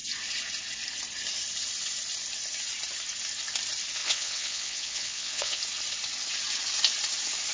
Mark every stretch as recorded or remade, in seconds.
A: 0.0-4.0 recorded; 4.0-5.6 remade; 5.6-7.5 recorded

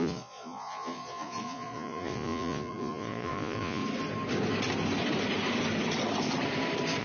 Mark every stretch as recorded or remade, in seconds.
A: 0.0-3.8 remade; 3.8-7.0 recorded

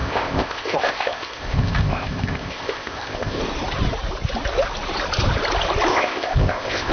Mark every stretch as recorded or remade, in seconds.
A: 0.0-3.4 remade; 3.4-5.9 recorded; 5.9-6.9 remade

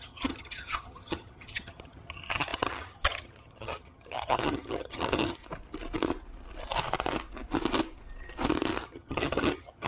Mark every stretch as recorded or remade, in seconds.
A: 0.0-5.4 remade; 5.4-8.8 recorded; 8.8-9.9 remade

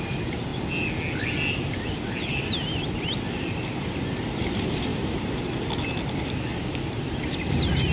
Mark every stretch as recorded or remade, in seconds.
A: 0.0-4.9 recorded; 4.9-5.5 remade; 5.5-6.5 recorded; 6.5-7.3 remade; 7.3-7.9 recorded

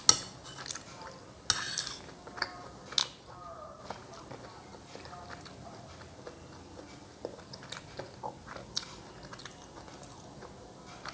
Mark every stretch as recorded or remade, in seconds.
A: 0.0-3.0 recorded; 3.0-3.8 remade; 3.8-4.7 recorded; 4.7-5.9 remade; 5.9-9.4 recorded; 9.4-11.1 remade

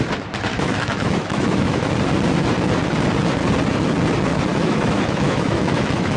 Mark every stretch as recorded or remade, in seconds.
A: 0.0-0.5 recorded; 0.5-1.9 remade; 1.9-4.5 recorded; 4.5-6.2 remade

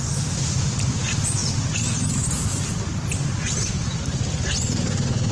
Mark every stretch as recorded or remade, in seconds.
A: 0.0-5.3 recorded